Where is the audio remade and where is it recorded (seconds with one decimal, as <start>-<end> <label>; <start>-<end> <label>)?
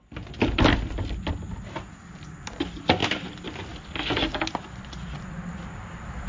0.0-6.3 recorded